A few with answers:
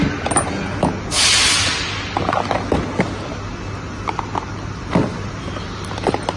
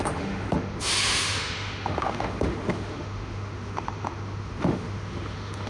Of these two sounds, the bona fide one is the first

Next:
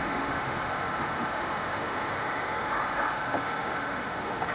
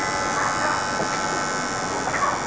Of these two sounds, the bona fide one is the second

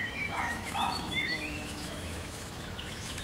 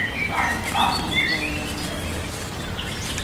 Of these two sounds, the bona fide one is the second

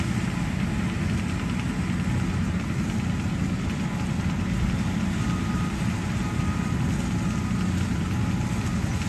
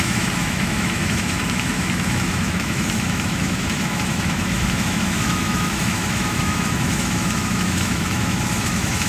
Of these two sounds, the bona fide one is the first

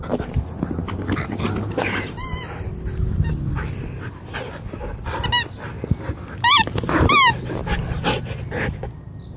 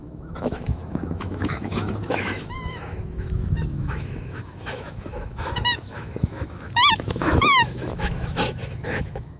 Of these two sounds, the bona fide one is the first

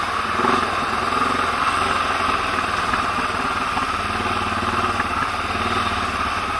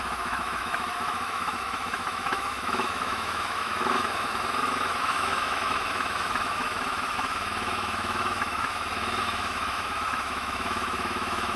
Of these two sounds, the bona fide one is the first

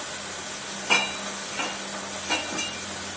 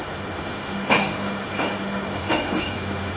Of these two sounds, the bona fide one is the first